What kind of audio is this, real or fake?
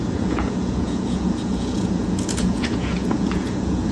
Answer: fake